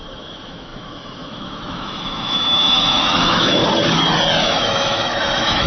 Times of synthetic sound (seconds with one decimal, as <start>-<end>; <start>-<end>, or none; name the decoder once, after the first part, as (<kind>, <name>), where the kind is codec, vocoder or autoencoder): 0.0-3.6 (autoencoder, DAC-VAE); 4.4-5.7